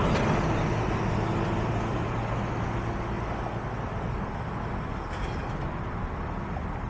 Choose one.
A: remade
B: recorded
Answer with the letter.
B